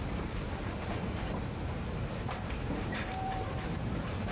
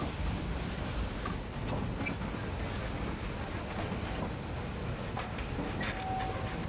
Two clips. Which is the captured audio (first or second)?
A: second